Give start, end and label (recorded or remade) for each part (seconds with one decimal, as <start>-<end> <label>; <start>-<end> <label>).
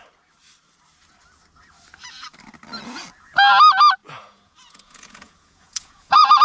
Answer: 0.0-4.0 recorded; 4.0-6.4 remade